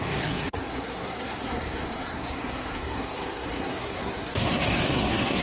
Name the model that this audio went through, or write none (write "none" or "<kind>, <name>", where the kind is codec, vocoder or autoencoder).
codec, SNAC